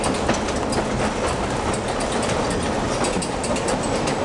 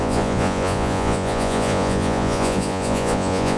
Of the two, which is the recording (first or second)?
first